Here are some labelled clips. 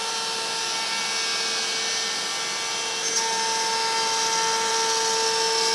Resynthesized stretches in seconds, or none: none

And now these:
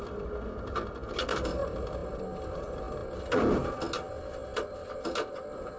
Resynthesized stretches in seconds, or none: none

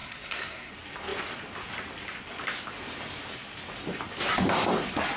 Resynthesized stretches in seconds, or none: 0.0-0.7

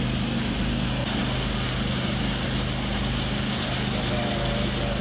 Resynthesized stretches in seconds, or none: none

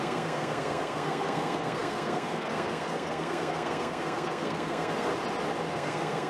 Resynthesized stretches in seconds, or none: 0.0-5.1; 5.7-6.3

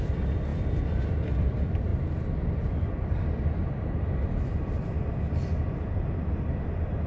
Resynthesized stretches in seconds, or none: none

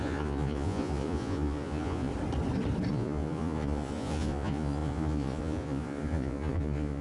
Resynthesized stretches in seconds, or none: 0.0-2.1; 2.9-7.0